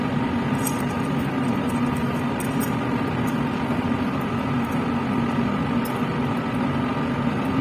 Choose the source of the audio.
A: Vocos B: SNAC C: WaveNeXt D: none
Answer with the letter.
D